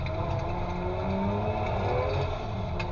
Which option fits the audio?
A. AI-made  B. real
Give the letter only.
B